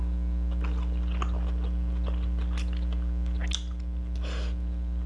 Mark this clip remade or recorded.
recorded